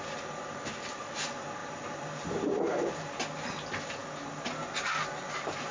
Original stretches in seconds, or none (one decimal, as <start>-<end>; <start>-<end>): 0.0-1.6; 3.1-5.7